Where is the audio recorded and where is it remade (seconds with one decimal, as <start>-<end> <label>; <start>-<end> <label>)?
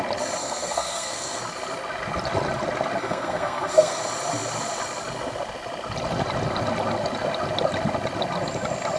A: 0.0-0.4 recorded; 0.4-1.4 remade; 1.4-3.0 recorded; 3.0-4.0 remade; 4.0-9.0 recorded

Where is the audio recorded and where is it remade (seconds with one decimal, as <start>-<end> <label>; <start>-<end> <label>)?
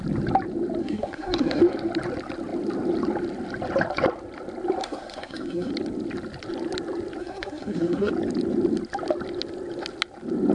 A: 0.0-0.8 recorded; 0.8-1.6 remade; 1.6-4.8 recorded; 4.8-5.7 remade; 5.7-7.2 recorded; 7.2-8.1 remade; 8.1-10.5 recorded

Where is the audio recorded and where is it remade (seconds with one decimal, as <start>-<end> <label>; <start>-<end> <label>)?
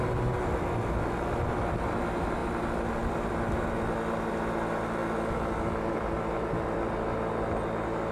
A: 0.0-8.1 recorded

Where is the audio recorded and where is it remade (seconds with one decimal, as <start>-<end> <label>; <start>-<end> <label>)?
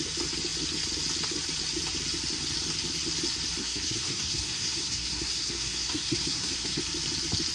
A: 0.0-3.6 recorded; 3.6-6.8 remade; 6.8-7.5 recorded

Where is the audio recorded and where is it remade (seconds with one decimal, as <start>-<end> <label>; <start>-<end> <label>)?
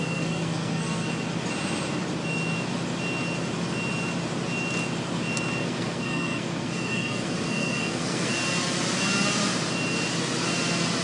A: 0.0-1.1 remade; 1.1-5.6 recorded; 5.6-8.3 remade; 8.3-11.0 recorded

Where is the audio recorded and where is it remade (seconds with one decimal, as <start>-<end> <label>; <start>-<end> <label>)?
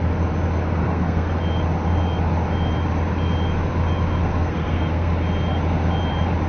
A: 0.0-0.8 recorded; 0.8-1.3 remade; 1.3-4.2 recorded; 4.2-5.1 remade; 5.1-6.5 recorded